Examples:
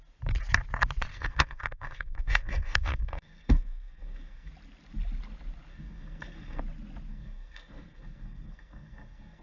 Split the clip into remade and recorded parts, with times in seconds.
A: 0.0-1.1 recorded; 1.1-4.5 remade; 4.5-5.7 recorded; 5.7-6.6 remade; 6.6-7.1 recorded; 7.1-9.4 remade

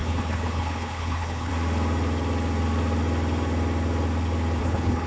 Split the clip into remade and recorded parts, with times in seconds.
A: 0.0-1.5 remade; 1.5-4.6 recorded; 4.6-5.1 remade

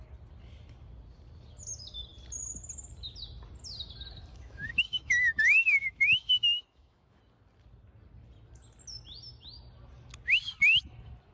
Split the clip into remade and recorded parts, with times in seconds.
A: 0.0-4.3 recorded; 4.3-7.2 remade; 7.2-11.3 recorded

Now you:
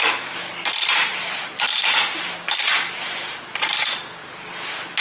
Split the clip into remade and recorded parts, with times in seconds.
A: 0.0-0.5 recorded; 0.5-3.5 remade; 3.5-5.0 recorded

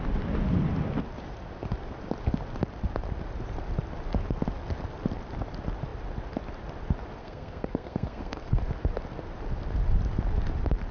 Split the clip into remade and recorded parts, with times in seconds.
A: 0.0-7.2 recorded; 7.2-8.6 remade; 8.6-10.9 recorded